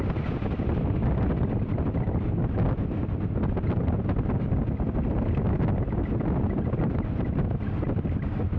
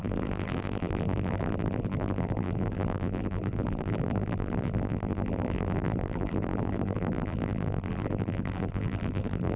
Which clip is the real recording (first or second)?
first